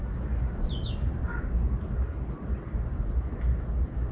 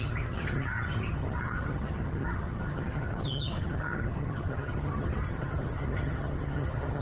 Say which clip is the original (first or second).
first